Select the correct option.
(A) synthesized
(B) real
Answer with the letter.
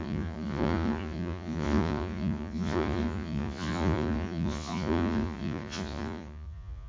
A